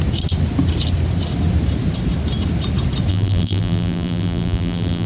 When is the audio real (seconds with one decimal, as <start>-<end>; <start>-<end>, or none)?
0.0-3.1